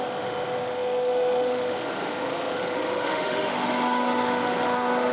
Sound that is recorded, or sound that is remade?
remade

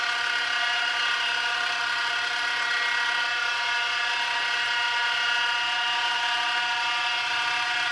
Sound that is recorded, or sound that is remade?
recorded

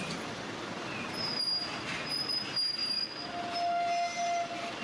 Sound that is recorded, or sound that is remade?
recorded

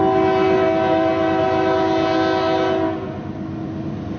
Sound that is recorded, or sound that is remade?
recorded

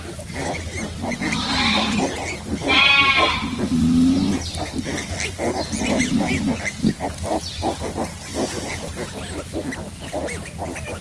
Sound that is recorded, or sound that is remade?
recorded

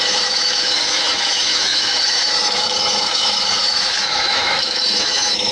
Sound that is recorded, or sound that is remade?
remade